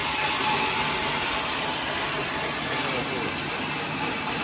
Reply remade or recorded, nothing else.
recorded